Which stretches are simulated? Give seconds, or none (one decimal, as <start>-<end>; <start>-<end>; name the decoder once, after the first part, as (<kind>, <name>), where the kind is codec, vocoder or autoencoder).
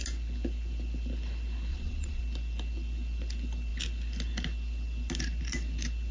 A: 1.7-2.2 (vocoder, Vocos)